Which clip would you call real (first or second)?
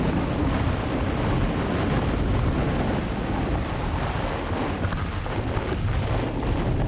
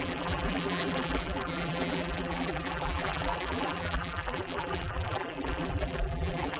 first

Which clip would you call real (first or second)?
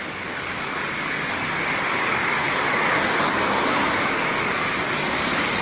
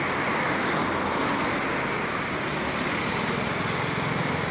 second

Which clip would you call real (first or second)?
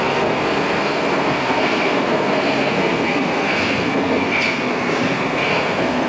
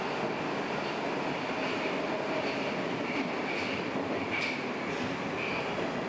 second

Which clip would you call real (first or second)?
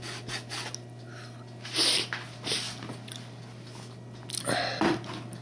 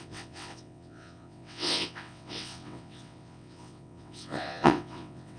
first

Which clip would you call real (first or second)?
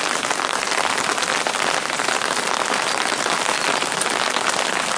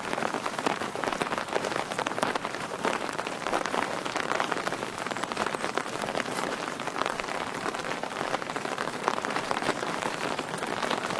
first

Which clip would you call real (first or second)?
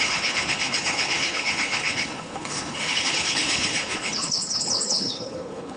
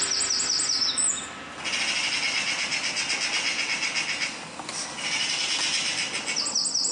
second